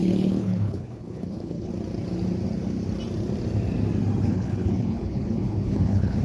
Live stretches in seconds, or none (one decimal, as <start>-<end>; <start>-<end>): 1.7-4.2